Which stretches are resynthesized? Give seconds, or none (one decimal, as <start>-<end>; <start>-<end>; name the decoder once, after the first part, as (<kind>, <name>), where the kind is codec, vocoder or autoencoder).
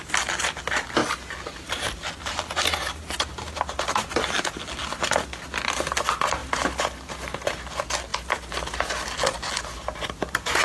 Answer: none